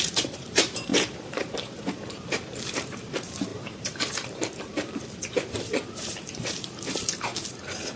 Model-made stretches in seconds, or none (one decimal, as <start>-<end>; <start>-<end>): 0.0-7.3